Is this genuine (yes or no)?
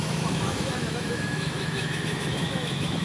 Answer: no